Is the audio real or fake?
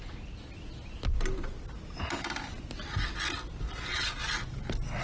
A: real